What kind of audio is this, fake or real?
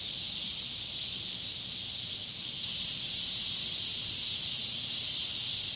fake